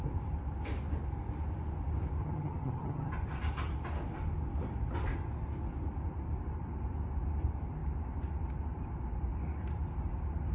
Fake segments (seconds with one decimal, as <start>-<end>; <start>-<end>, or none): 2.2-3.1